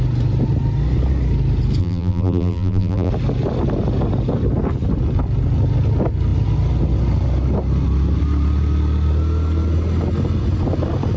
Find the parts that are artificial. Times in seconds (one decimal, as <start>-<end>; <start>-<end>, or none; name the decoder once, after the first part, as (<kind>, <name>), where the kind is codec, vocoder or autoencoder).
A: 1.8-3.1 (vocoder, BigVGAN v2)